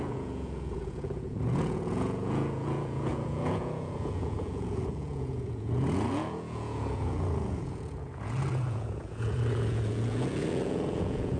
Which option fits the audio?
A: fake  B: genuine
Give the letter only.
A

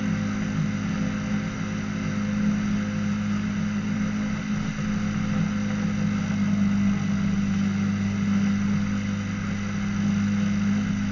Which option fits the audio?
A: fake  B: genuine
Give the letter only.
B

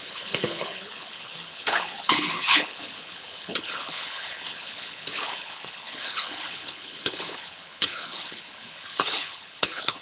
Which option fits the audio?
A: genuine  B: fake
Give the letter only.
B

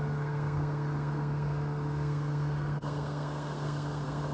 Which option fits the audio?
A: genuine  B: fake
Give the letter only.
B